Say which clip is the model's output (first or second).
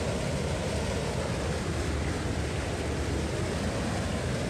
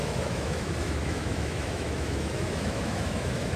second